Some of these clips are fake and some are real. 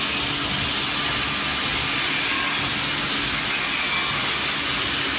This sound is real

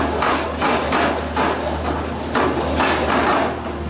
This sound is real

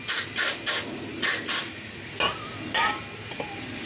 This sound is real